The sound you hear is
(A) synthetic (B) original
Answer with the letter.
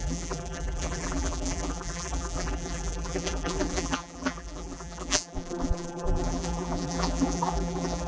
A